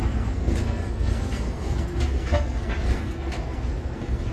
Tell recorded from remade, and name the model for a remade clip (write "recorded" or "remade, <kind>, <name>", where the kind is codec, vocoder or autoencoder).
remade, codec, SNAC